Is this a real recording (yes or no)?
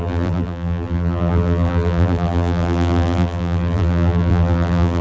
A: no